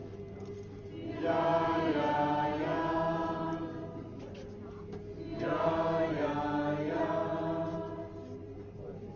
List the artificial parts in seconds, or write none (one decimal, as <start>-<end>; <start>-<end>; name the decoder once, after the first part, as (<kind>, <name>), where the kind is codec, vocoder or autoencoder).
none